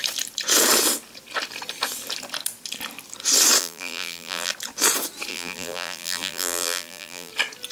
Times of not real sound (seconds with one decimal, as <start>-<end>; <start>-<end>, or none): 3.6-4.5; 5.3-7.3

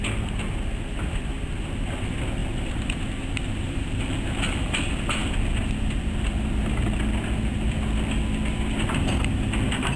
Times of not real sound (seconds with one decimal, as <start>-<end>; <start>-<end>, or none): 2.4-4.8